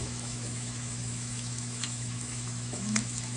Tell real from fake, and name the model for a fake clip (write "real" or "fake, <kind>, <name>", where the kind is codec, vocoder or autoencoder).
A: fake, autoencoder, DAC-VAE